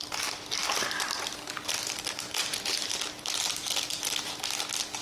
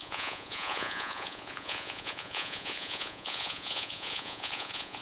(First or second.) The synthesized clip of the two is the second